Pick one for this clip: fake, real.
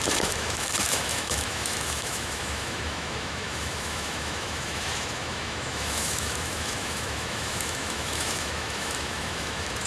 fake